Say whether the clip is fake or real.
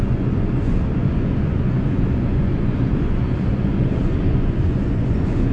fake